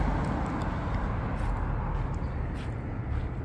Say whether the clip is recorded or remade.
recorded